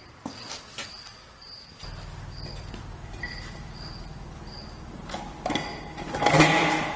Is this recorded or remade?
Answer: recorded